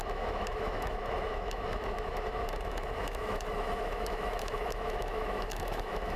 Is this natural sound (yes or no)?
no